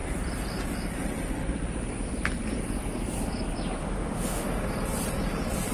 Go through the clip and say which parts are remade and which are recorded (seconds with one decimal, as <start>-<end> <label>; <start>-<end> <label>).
0.0-3.8 recorded; 3.8-4.5 remade; 4.5-5.7 recorded